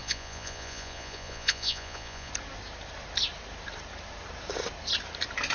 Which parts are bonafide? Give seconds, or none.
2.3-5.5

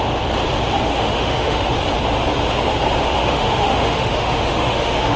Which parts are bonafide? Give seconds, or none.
0.0-0.9; 1.7-3.0

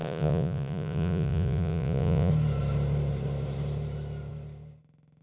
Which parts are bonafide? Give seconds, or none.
2.3-5.2

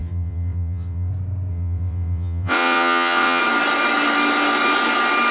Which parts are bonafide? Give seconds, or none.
1.1-1.5; 3.4-5.3